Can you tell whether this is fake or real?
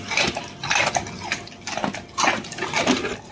real